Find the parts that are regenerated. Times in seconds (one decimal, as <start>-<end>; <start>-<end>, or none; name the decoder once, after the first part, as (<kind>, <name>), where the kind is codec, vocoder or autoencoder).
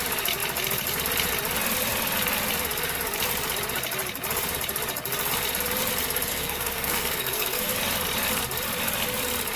6.3-7.7 (codec, SNAC)